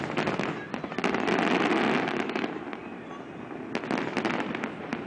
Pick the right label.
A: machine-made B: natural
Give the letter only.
B